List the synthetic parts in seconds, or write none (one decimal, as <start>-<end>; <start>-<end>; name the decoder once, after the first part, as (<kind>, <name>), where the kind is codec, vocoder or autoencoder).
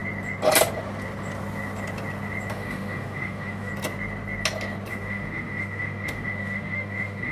2.5-3.7 (autoencoder, DAC-VAE); 4.9-7.3